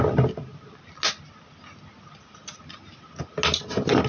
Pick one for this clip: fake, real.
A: real